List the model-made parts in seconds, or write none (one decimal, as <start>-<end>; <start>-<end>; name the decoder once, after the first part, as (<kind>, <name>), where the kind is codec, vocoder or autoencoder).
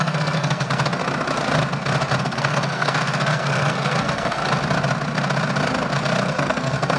0.0-1.0 (codec, SNAC); 2.2-4.4; 6.2-7.0